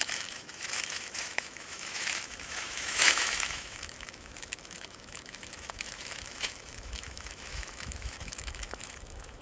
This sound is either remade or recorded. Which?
remade